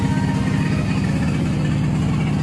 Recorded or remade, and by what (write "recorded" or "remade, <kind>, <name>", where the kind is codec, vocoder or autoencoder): recorded